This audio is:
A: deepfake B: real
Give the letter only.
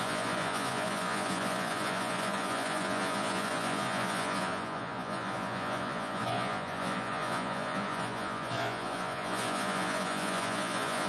A